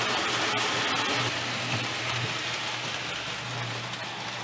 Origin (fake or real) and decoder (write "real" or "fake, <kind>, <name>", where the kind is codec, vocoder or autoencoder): real